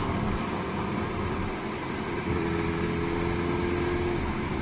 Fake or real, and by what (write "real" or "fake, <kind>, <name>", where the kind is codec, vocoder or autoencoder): real